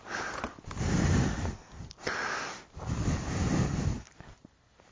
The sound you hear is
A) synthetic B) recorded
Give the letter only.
B